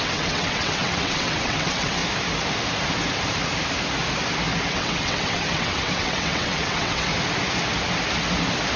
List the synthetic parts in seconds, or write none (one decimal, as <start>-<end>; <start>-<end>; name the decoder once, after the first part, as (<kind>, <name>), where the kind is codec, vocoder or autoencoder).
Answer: 0.0-2.0 (vocoder, WaveNeXt); 4.7-7.1